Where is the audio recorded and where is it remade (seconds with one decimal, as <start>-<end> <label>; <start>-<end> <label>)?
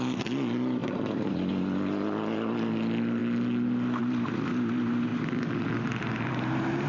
0.0-6.9 recorded